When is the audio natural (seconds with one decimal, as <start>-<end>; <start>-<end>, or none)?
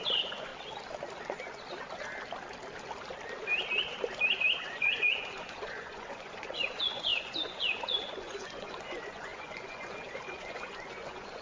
0.5-4.6